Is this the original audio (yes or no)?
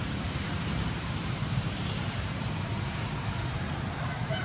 no